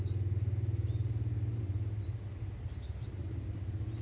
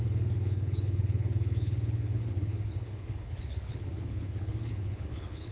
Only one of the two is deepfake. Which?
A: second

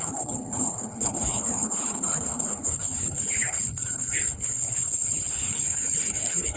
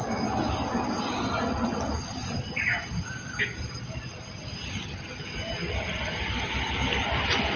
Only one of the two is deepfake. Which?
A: first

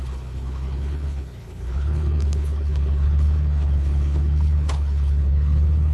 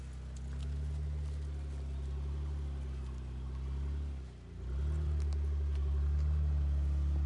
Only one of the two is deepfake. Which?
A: first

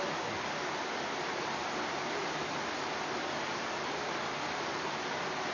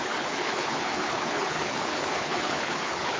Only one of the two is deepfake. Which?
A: second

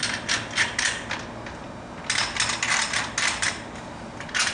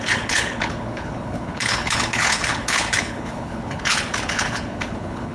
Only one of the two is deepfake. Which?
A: second